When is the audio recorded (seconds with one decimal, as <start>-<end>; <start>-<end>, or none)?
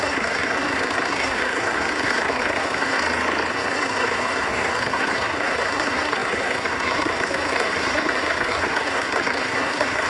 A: 3.0-3.5